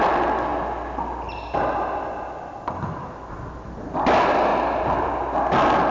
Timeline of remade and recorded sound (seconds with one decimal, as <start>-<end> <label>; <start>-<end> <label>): 0.0-5.9 recorded